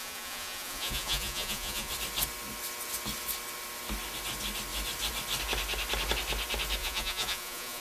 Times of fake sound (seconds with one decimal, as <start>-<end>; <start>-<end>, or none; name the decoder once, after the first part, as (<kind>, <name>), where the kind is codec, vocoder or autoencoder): 0.0-1.9 (vocoder, Vocos); 6.8-7.8